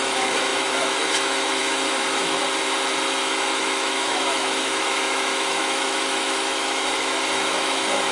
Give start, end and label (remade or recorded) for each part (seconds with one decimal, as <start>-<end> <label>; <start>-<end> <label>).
0.0-2.4 remade; 2.4-3.2 recorded; 3.2-8.1 remade